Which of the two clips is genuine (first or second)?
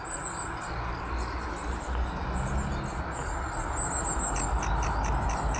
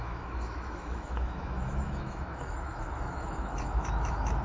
first